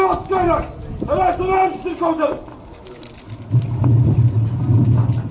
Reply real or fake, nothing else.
real